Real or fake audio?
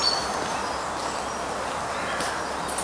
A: real